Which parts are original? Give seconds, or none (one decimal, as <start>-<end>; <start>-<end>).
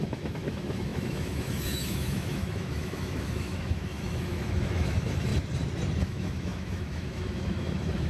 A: 5.3-6.0